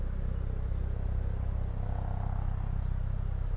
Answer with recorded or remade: recorded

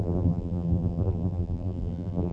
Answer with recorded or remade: remade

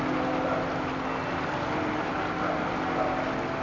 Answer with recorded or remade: recorded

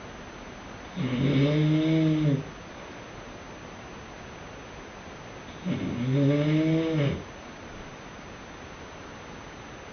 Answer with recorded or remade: recorded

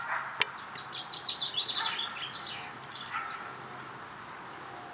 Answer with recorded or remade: recorded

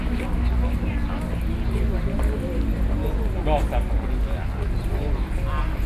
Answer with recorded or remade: recorded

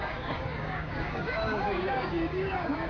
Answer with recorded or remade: remade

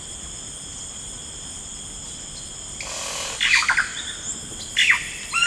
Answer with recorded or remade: recorded